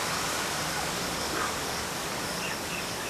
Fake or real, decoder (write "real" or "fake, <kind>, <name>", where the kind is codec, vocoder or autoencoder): fake, codec, DAC